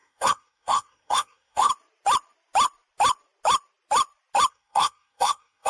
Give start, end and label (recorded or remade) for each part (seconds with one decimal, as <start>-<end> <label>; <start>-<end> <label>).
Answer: 0.0-1.7 remade; 1.7-4.5 recorded; 4.5-5.7 remade